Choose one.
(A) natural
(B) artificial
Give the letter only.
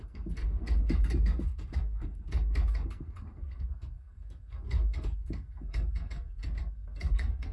B